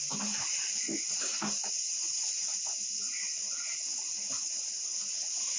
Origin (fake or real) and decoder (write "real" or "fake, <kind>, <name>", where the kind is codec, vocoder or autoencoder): real